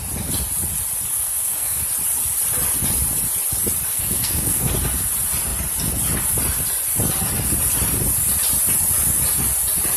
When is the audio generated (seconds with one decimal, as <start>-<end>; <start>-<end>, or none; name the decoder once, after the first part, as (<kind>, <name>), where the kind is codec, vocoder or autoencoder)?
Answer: 1.1-1.8 (codec, SNAC); 3.9-4.7